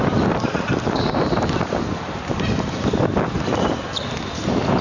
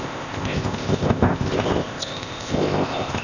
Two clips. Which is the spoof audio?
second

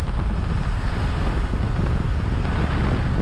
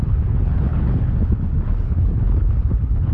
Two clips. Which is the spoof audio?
second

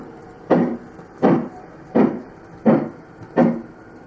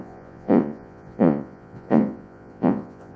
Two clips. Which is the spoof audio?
second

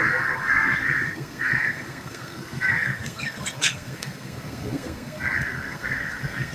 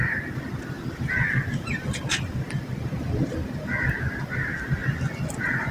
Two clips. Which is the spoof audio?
first